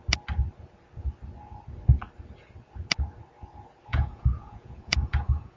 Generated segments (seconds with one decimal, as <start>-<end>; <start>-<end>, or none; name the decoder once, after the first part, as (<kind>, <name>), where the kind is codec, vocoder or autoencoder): 3.9-5.6 (vocoder, Vocos)